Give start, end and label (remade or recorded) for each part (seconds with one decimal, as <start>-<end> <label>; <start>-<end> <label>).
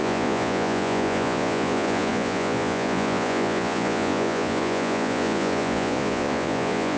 0.0-7.0 remade